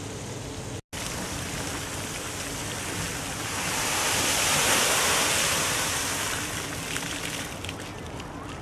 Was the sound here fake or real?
real